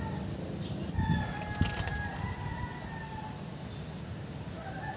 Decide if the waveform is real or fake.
real